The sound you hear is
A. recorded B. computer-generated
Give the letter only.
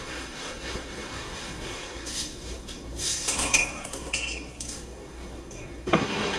B